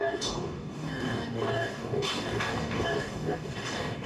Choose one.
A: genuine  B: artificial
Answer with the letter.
B